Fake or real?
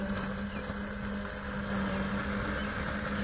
real